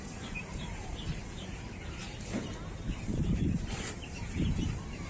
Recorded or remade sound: remade